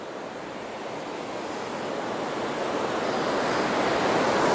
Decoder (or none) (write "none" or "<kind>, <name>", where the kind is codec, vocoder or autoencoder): none